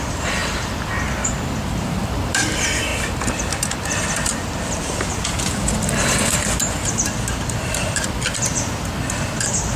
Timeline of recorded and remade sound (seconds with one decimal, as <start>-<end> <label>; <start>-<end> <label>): 0.0-0.4 remade; 0.4-1.9 recorded; 1.9-2.9 remade; 2.9-7.4 recorded; 7.4-9.8 remade